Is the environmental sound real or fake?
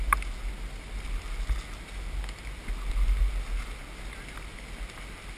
real